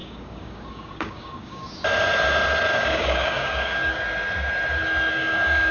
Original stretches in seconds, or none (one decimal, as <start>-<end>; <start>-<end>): 1.6-2.7; 3.8-5.1